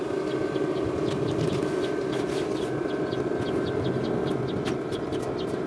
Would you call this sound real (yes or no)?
yes